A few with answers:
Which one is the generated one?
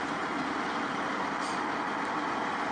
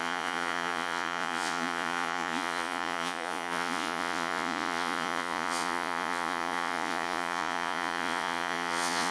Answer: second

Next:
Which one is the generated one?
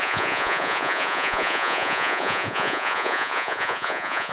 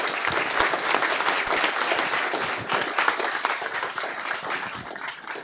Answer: first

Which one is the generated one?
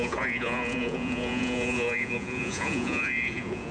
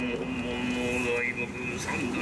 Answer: first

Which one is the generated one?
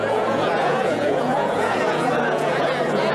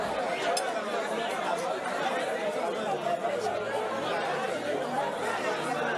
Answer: first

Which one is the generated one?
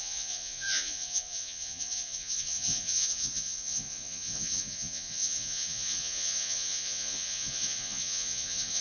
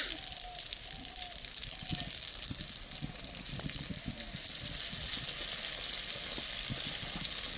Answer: first